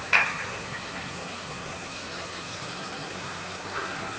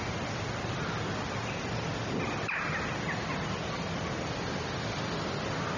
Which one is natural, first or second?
second